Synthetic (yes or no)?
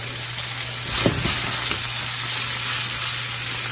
no